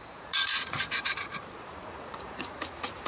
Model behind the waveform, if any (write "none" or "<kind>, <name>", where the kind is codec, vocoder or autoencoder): vocoder, Vocos